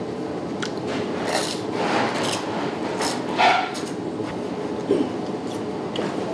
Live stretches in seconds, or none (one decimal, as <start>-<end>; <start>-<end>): 0.0-6.3